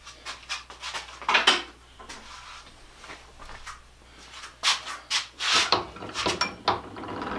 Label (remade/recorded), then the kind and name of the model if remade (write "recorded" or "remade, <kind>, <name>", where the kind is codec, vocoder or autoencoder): recorded